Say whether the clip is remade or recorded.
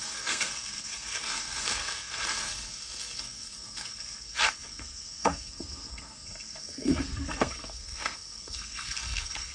remade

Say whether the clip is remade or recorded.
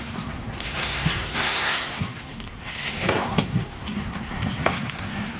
remade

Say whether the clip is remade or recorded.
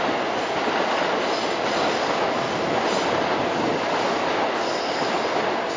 recorded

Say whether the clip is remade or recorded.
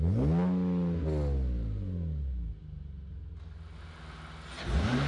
recorded